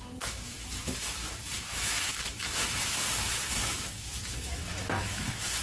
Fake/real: fake